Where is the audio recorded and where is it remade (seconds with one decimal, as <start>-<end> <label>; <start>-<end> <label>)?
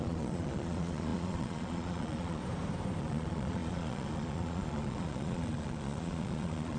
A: 0.0-2.4 remade; 2.4-3.0 recorded; 3.0-6.8 remade